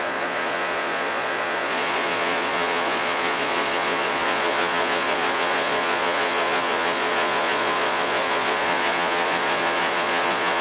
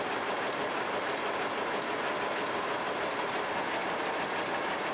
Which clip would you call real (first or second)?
second